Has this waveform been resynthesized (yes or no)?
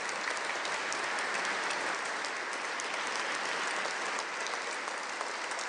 no